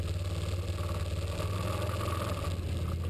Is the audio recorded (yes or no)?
yes